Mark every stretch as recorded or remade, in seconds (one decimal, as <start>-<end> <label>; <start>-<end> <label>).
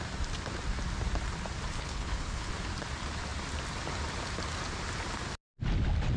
0.0-1.7 recorded; 1.7-2.5 remade; 2.5-6.2 recorded